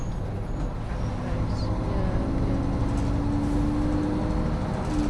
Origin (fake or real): real